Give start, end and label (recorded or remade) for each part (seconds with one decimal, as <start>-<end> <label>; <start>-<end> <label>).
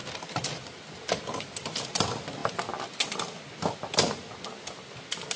0.0-5.4 recorded